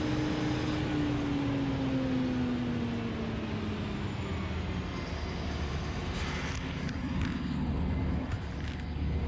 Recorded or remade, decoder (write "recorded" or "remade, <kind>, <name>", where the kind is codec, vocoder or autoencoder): recorded